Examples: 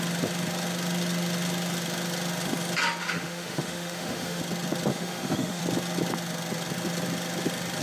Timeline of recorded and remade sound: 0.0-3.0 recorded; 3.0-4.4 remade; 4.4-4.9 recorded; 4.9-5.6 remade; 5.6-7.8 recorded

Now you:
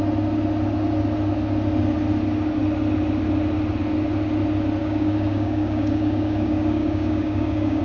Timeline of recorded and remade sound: 0.0-4.8 recorded; 4.8-7.8 remade

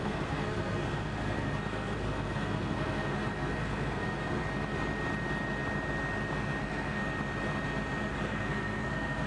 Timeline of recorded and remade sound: 0.0-4.4 remade; 4.4-6.6 recorded; 6.6-7.0 remade; 7.0-8.1 recorded; 8.1-9.3 remade

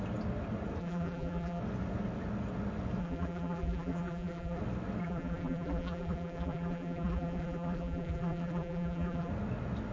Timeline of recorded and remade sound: 0.0-0.8 recorded; 0.8-1.6 remade; 1.6-3.0 recorded; 3.0-4.6 remade; 4.6-5.0 recorded; 5.0-9.3 remade; 9.3-9.9 recorded

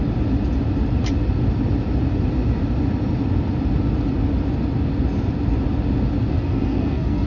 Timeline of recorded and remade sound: 0.0-6.3 recorded; 6.3-7.3 remade

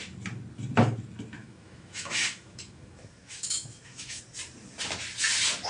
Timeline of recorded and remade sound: 0.0-1.4 recorded; 1.4-4.2 remade; 4.2-5.7 recorded